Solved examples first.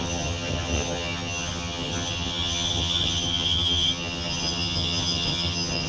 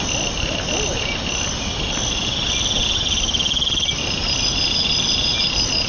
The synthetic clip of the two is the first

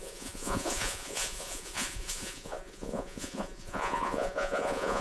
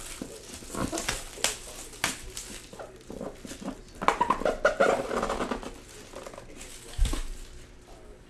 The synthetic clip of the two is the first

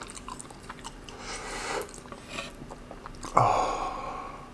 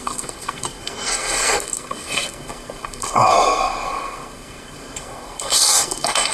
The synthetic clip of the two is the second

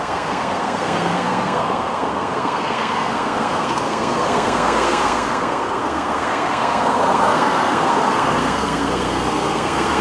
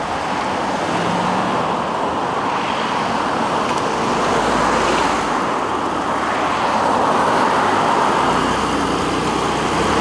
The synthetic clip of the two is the first